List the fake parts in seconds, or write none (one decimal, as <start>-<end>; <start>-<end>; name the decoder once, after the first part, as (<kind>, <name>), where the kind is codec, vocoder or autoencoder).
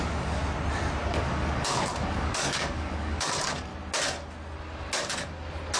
0.0-0.4 (codec, DAC); 1.1-3.7